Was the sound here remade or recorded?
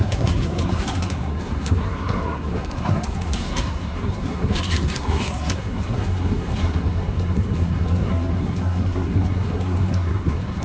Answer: remade